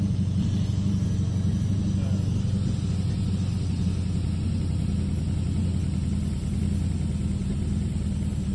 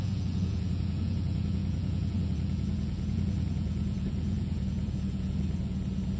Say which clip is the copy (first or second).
second